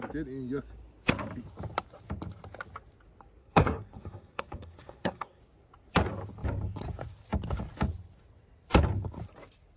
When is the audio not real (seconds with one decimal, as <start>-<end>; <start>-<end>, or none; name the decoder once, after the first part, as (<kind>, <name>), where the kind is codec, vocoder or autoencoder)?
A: 3.4-5.4 (codec, SNAC)